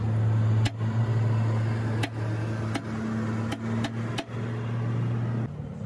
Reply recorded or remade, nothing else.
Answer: recorded